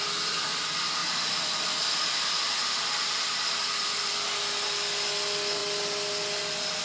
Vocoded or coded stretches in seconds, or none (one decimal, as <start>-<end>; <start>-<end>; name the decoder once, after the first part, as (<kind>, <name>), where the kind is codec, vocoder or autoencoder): none